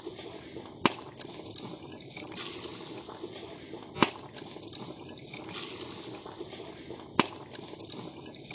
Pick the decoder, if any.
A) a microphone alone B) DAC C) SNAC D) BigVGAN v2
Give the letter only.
A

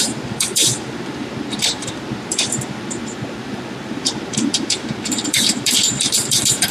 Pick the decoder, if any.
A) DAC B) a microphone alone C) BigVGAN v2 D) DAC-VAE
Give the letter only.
C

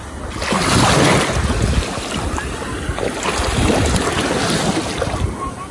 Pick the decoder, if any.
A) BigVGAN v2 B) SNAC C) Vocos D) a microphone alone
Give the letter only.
D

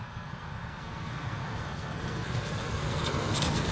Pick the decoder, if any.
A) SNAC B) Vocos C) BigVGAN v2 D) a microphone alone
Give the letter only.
A